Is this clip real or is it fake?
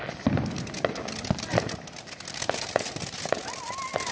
real